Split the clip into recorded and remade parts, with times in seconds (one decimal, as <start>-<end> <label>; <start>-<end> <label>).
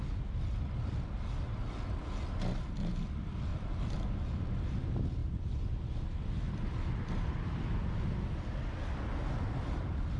0.0-3.5 recorded; 3.5-4.3 remade; 4.3-5.2 recorded; 5.2-7.3 remade; 7.3-9.2 recorded; 9.2-10.2 remade